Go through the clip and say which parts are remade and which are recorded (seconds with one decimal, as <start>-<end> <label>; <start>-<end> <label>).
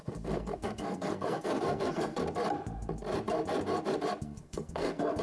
0.0-2.2 remade; 2.2-4.2 recorded; 4.2-5.2 remade